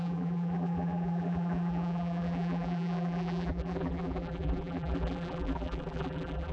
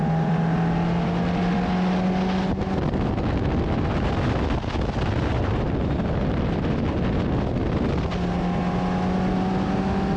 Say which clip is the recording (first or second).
second